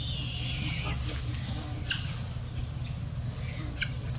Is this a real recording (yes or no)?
yes